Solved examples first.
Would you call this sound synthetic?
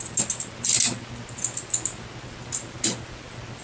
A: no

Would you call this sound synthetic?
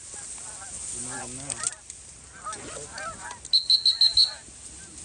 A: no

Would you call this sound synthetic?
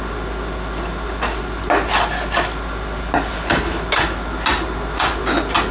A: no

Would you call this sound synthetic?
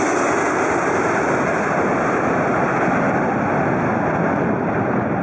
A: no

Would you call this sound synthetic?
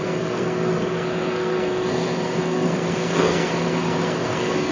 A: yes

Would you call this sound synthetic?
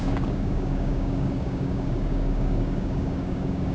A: yes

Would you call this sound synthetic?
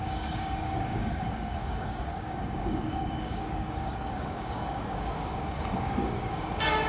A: yes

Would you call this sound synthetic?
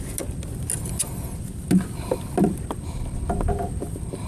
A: no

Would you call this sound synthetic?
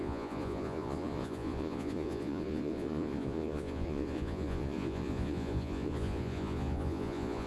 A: yes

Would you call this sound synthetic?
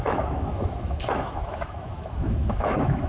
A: yes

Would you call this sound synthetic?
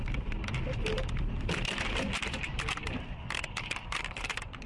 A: yes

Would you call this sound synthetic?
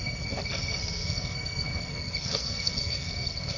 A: yes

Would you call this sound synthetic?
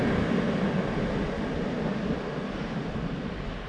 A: no